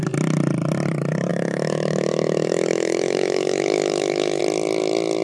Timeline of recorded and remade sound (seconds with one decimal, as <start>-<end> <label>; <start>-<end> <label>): 0.0-1.3 recorded; 1.3-4.4 remade; 4.4-5.2 recorded